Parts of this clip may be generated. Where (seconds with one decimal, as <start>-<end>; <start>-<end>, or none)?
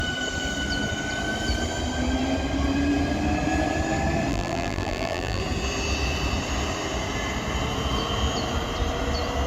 4.3-5.4